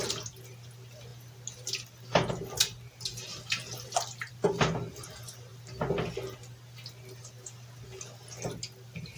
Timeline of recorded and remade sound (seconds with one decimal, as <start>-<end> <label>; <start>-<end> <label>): 0.0-3.3 recorded; 3.3-4.3 remade; 4.3-5.5 recorded; 5.5-6.1 remade; 6.1-9.2 recorded